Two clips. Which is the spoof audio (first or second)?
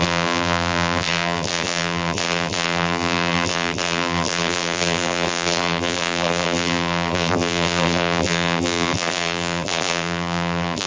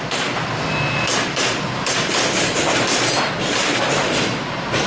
first